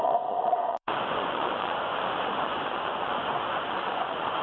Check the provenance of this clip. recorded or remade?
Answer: remade